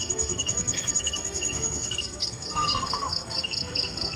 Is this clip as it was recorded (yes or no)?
no